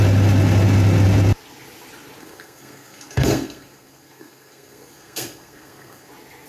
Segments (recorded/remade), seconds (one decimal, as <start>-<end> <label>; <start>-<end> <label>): 0.0-2.2 recorded; 2.2-6.1 remade; 6.1-6.5 recorded

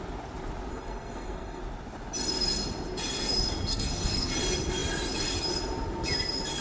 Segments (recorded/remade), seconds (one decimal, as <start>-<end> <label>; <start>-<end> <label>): 0.0-0.7 recorded; 0.7-1.6 remade; 1.6-3.7 recorded; 3.7-4.3 remade; 4.3-6.6 recorded

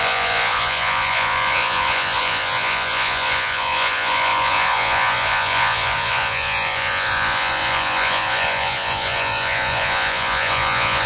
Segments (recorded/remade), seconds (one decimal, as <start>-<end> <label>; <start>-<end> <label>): 0.0-11.1 remade

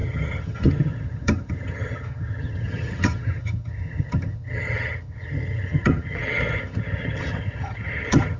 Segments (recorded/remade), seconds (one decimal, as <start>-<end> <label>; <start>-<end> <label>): 0.0-8.4 remade

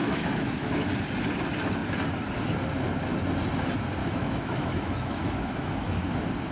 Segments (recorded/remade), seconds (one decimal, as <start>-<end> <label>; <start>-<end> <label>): 0.0-0.9 remade; 0.9-4.0 recorded; 4.0-6.0 remade; 6.0-6.5 recorded

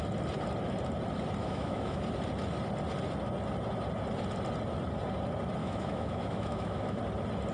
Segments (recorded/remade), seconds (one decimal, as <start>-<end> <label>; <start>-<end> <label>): 0.0-1.4 recorded; 1.4-2.0 remade; 2.0-5.6 recorded; 5.6-7.0 remade; 7.0-7.5 recorded

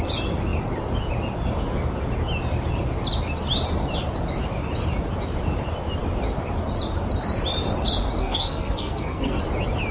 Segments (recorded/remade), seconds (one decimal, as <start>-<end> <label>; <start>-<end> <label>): 0.0-8.2 recorded; 8.2-9.4 remade; 9.4-9.9 recorded

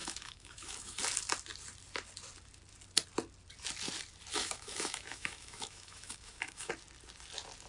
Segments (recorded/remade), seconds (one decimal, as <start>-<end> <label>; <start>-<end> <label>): 0.0-1.0 remade; 1.0-4.3 recorded; 4.3-6.7 remade; 6.7-7.7 recorded